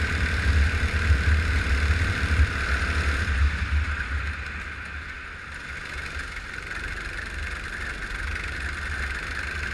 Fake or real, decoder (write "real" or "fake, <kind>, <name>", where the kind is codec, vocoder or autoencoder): real